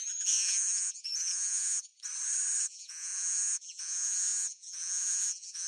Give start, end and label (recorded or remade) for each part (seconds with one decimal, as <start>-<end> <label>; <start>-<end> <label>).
0.0-1.9 remade; 1.9-2.6 recorded; 2.6-5.7 remade